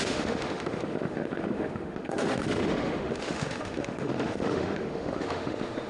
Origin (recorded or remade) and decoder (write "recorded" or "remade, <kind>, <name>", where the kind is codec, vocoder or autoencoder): remade, autoencoder, DAC-VAE